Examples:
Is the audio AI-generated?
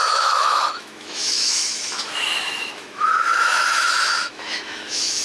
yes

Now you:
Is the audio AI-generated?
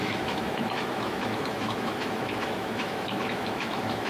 yes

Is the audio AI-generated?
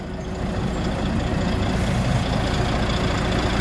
no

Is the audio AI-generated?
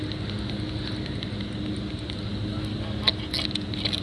no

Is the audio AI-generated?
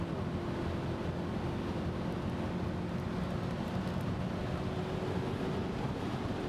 no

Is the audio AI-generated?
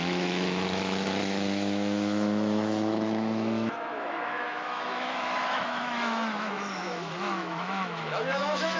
yes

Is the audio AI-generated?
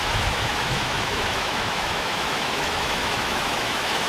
yes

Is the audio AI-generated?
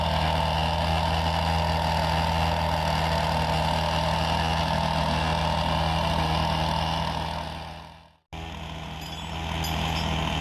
no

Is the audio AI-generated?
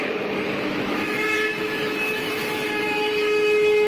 yes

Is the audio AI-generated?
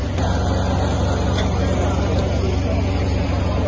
no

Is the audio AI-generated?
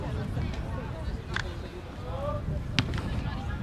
no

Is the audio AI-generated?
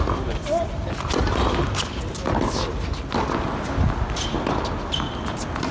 no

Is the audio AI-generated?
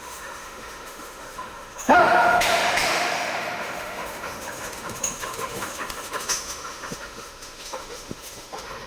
yes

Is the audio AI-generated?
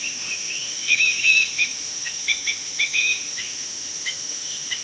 yes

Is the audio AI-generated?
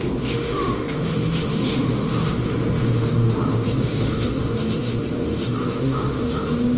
yes